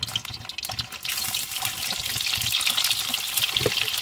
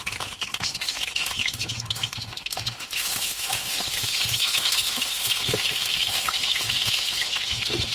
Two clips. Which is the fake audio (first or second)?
second